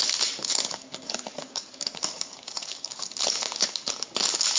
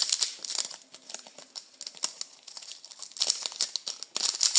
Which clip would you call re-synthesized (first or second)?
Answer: first